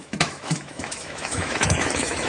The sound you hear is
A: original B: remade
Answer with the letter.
B